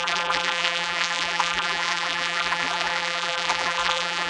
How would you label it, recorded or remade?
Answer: remade